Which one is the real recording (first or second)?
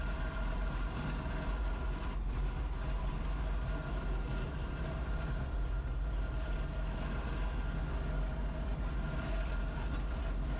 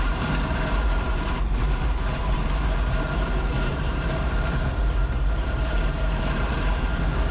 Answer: first